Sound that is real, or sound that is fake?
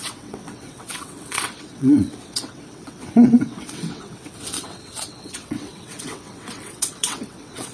fake